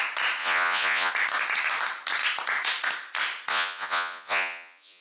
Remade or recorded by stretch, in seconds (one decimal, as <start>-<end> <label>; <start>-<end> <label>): 0.0-0.4 recorded; 0.4-1.1 remade; 1.1-3.5 recorded; 3.5-5.0 remade